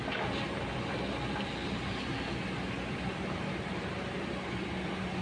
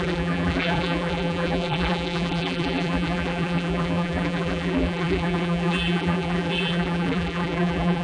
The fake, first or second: second